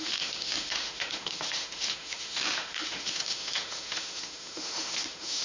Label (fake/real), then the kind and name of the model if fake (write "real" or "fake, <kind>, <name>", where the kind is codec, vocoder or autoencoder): fake, autoencoder, DAC-VAE